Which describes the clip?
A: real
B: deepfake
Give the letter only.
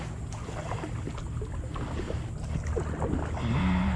A